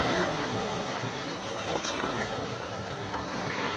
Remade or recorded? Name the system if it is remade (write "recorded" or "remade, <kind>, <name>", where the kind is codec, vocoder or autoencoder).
remade, codec, SNAC